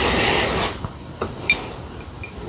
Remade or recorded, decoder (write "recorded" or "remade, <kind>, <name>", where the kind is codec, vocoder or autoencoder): recorded